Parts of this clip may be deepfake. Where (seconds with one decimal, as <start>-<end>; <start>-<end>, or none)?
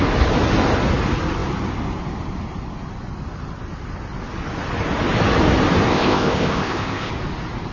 5.9-7.1